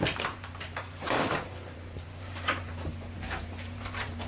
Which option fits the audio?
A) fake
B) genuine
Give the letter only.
A